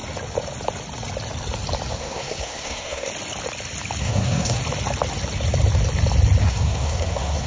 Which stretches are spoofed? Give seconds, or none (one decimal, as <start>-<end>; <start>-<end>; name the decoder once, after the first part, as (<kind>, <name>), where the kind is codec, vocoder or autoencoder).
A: 1.9-3.1 (codec, SNAC); 4.0-4.6; 6.4-7.5